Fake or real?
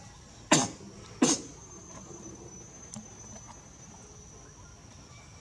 real